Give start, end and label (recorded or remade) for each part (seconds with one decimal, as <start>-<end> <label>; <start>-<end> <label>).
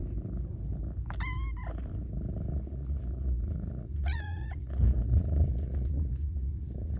0.0-2.5 recorded; 2.5-7.0 remade